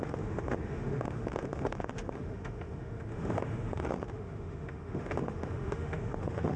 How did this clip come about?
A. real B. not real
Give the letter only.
B